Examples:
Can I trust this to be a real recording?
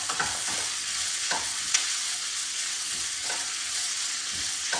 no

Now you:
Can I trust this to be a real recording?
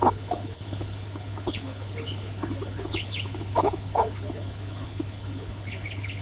no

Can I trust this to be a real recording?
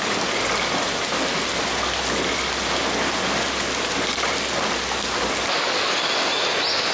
yes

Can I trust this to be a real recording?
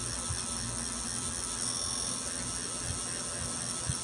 yes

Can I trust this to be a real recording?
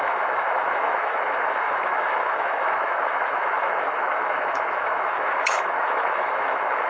no